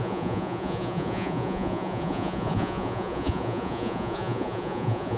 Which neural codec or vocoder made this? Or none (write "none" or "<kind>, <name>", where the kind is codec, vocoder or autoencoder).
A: vocoder, Vocos